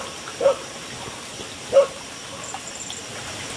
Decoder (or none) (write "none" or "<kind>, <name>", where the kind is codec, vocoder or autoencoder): none